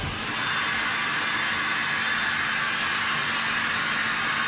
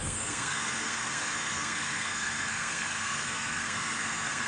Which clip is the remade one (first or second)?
second